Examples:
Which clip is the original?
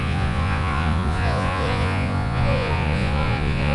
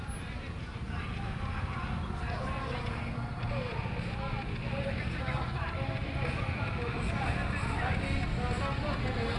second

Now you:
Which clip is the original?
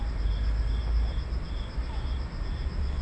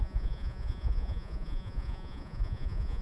first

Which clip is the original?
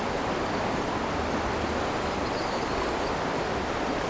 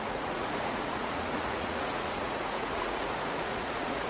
first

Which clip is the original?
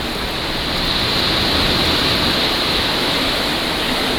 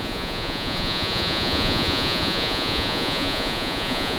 first